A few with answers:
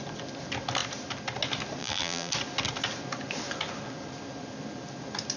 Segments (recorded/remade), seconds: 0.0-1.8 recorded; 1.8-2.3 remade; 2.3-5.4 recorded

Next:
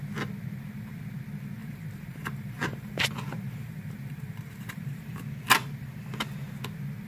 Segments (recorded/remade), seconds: 0.0-1.6 recorded; 1.6-5.2 remade; 5.2-7.1 recorded